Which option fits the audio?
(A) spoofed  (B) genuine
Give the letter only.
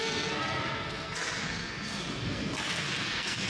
A